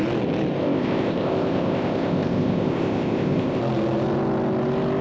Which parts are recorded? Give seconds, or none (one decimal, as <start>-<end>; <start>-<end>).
0.0-0.6; 3.6-5.0

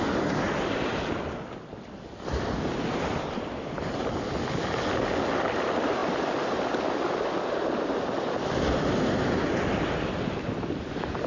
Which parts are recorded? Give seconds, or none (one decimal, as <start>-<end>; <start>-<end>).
0.0-11.3

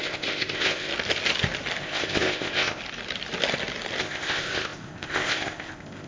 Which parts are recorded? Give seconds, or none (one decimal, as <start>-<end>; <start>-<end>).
0.9-1.8; 2.8-4.0

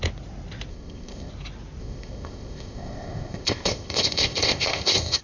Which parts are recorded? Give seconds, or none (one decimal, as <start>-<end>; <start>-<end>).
0.0-0.7; 1.3-1.8

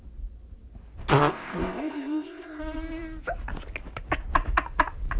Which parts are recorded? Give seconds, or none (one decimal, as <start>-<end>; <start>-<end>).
0.0-1.2; 2.6-5.2

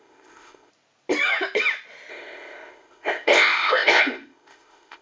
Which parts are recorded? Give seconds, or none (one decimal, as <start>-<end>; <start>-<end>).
0.7-2.1

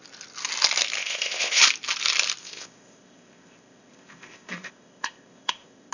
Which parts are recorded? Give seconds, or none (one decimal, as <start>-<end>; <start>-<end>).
0.0-1.0; 1.6-2.4